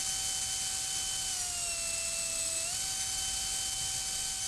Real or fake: real